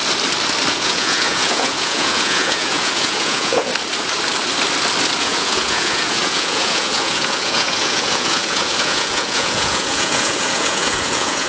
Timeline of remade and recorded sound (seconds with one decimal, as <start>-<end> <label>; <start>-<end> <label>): 0.0-0.7 recorded; 0.7-3.7 remade; 3.7-5.2 recorded; 5.2-11.5 remade